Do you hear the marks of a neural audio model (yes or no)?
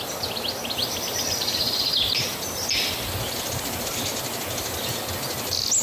no